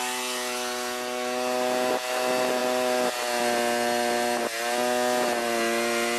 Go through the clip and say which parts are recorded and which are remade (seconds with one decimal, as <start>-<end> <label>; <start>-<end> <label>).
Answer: 0.0-6.2 recorded